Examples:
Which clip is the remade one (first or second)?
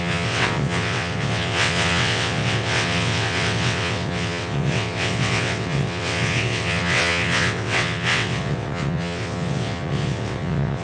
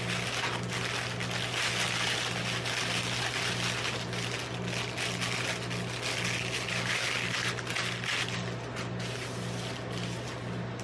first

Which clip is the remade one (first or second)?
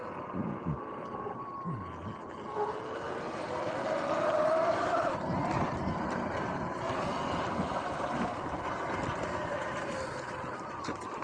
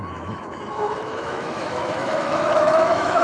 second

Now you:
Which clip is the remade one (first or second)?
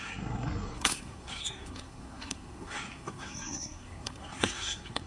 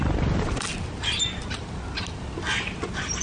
first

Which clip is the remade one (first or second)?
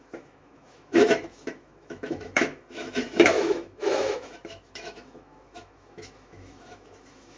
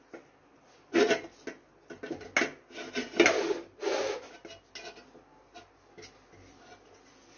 first